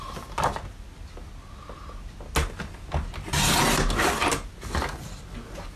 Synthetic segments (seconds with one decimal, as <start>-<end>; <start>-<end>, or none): none